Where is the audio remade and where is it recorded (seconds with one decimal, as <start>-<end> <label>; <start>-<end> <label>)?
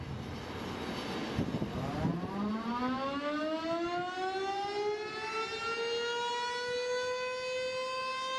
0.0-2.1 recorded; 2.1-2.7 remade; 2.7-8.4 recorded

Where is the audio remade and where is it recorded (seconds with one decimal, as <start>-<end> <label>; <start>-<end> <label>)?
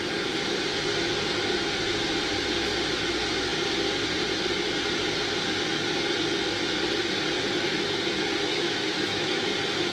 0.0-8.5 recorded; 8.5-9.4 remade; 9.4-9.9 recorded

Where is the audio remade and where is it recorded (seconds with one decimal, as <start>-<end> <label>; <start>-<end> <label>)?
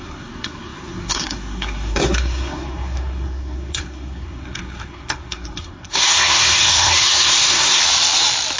0.0-7.8 remade; 7.8-8.6 recorded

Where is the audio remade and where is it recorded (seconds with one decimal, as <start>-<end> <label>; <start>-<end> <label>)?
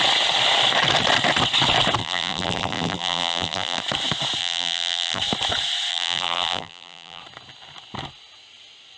0.0-2.0 recorded; 2.0-3.8 remade; 3.8-4.4 recorded; 4.4-5.2 remade; 5.2-5.9 recorded; 5.9-7.2 remade; 7.2-9.0 recorded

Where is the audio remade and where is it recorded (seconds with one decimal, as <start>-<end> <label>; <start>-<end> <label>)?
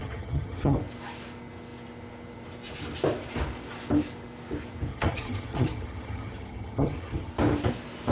0.0-0.8 remade; 0.8-4.9 recorded; 4.9-7.3 remade; 7.3-8.1 recorded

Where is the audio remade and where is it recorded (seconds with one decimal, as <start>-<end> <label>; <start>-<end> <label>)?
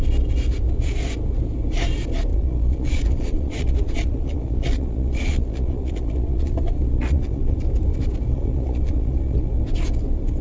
0.0-2.3 recorded; 2.3-7.5 remade; 7.5-8.3 recorded; 8.3-9.4 remade; 9.4-10.4 recorded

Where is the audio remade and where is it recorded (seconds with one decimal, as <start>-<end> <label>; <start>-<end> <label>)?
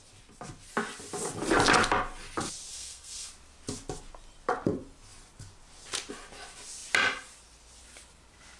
0.0-2.7 recorded; 2.7-3.3 remade; 3.3-8.6 recorded